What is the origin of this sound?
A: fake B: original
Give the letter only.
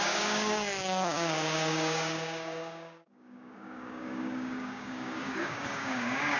A